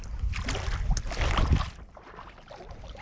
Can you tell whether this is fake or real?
real